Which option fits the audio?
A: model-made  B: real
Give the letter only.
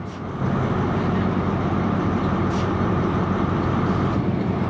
B